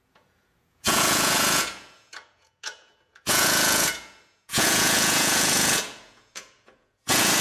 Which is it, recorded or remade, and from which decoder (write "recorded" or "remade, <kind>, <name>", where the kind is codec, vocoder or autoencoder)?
remade, vocoder, Vocos